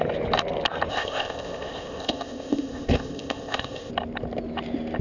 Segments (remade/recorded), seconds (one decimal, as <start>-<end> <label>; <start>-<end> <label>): 0.0-0.9 recorded; 0.9-3.9 remade; 3.9-5.0 recorded